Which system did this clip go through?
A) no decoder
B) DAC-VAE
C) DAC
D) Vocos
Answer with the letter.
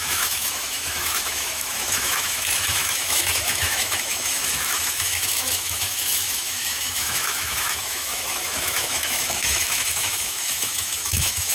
B